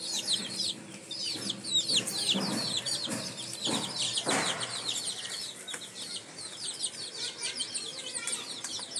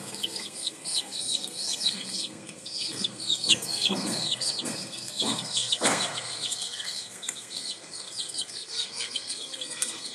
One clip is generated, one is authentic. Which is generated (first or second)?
second